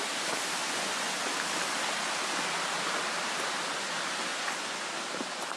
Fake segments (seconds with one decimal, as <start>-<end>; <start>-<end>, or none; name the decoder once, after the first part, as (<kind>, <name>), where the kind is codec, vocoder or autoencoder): 0.6-1.2 (vocoder, Vocos); 4.3-4.8